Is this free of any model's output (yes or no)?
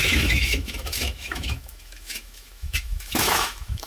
no